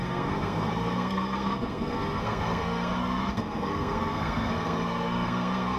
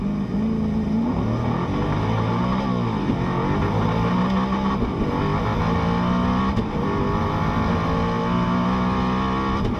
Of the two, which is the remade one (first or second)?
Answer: first